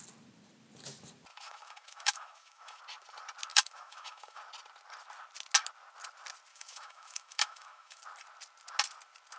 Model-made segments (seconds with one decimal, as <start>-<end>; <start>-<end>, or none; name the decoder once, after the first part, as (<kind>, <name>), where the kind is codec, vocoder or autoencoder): 1.3-2.8 (autoencoder, DAC-VAE); 3.5-4.4; 6.5-8.0